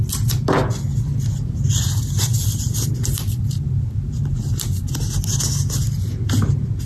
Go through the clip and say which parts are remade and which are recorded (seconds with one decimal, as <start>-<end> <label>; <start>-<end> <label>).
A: 0.0-0.9 recorded; 0.9-5.0 remade; 5.0-6.9 recorded